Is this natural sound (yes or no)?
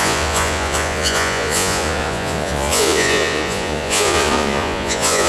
no